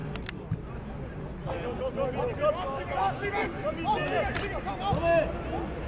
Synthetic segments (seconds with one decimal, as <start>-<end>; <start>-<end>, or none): none

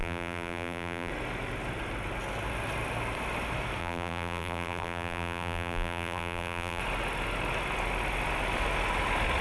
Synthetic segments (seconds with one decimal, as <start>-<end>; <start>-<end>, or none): 0.0-1.1; 3.8-6.8

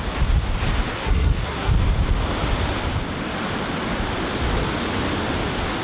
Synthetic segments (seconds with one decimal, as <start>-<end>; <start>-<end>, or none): 0.9-1.7

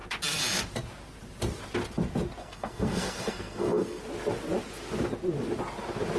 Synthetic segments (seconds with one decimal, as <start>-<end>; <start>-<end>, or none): 2.4-4.0

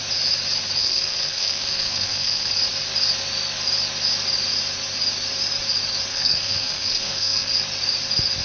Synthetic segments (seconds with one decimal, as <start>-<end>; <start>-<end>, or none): 0.8-2.5; 6.1-7.5

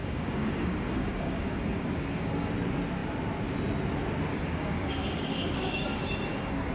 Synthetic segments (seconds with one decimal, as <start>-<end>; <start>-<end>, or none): 0.0-2.5; 4.3-6.7

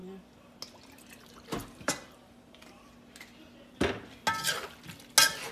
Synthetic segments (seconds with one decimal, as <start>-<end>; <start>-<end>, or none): 1.6-2.8